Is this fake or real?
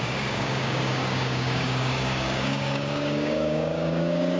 fake